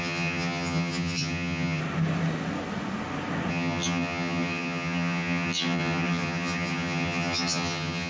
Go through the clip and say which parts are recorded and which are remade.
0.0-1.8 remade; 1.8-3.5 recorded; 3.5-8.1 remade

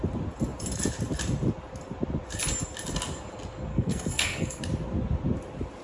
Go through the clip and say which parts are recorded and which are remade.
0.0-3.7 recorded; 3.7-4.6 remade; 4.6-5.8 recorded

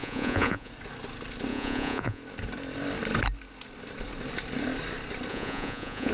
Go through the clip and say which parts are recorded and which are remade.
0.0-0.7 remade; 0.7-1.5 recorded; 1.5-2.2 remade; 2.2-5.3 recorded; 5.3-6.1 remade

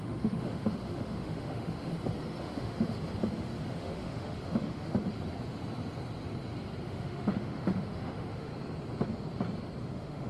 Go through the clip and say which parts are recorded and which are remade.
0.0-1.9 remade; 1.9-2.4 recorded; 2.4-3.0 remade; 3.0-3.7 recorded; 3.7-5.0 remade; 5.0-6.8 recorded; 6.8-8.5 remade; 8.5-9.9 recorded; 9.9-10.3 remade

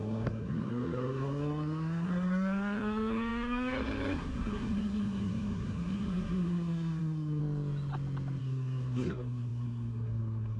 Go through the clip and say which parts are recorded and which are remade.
0.0-7.4 remade; 7.4-8.4 recorded; 8.4-10.6 remade

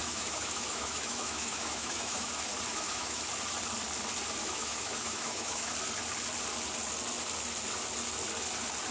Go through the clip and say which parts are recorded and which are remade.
0.0-2.3 remade; 2.3-2.7 recorded; 2.7-3.2 remade; 3.2-4.4 recorded; 4.4-5.7 remade; 5.7-8.9 recorded